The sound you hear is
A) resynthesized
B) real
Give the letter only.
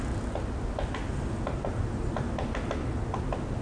B